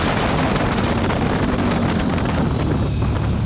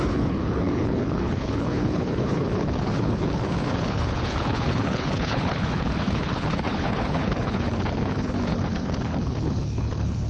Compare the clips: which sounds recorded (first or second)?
first